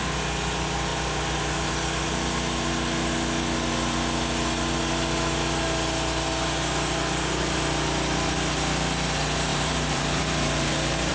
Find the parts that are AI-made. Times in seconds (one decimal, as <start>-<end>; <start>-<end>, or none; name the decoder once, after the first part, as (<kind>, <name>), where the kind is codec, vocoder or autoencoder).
9.5-11.1 (vocoder, BigVGAN v2)